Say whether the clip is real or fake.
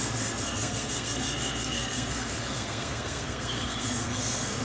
fake